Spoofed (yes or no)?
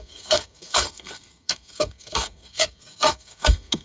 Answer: yes